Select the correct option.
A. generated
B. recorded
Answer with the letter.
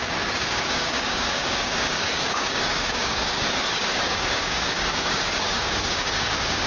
A